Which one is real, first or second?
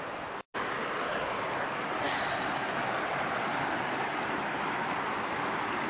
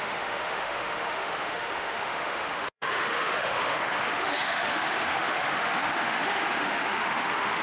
first